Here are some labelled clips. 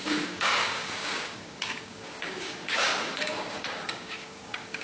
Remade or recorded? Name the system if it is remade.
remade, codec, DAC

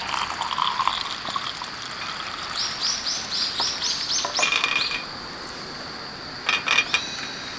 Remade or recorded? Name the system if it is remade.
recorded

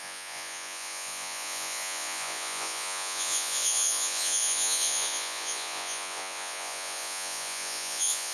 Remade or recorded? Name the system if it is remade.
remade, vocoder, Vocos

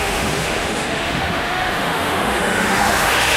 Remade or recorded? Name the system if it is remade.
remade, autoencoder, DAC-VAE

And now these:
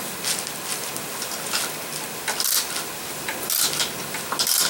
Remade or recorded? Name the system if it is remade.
recorded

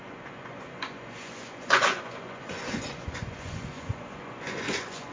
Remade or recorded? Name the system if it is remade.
remade, vocoder, Vocos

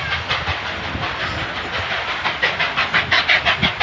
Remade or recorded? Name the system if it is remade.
recorded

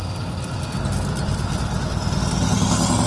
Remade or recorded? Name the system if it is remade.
recorded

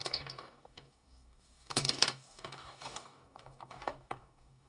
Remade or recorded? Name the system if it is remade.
remade, codec, DAC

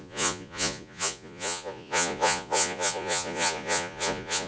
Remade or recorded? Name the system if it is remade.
remade, vocoder, Vocos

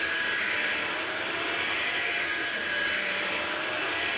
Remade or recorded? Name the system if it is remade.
recorded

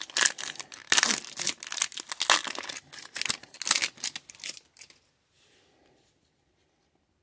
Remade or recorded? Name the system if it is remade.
recorded